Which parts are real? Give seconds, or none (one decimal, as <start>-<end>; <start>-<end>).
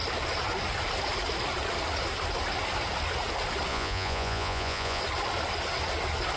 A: 0.0-3.7; 5.0-6.4